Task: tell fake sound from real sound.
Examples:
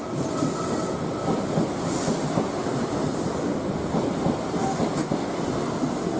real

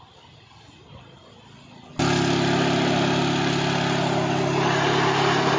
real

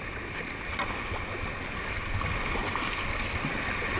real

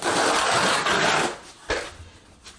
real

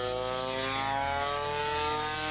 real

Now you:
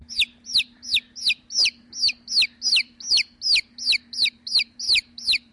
fake